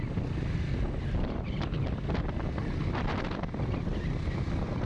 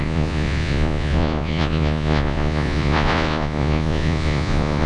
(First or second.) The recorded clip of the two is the first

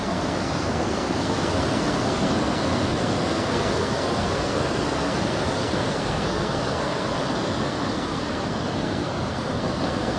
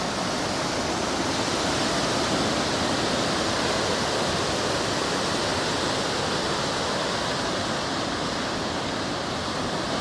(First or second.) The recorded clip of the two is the second